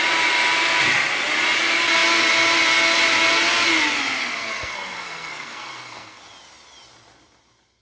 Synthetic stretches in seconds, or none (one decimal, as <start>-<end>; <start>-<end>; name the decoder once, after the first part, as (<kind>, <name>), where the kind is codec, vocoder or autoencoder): 4.2-6.2 (codec, SNAC)

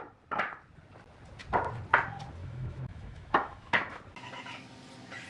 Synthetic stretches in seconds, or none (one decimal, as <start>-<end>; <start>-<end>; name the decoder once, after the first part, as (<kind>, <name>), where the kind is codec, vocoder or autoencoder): 2.4-4.0 (autoencoder, DAC-VAE)

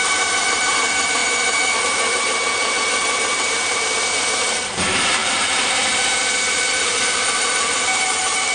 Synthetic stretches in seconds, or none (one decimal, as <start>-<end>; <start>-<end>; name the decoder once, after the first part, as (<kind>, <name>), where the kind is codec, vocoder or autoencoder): 0.0-1.2 (vocoder, BigVGAN v2); 1.8-8.5

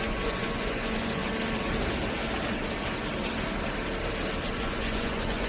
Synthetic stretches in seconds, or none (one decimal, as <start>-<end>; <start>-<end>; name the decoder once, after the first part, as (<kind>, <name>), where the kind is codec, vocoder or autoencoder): 0.0-1.2 (vocoder, Vocos); 4.5-5.5